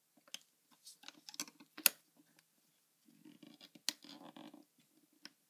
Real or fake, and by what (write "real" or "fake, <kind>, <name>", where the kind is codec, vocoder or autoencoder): real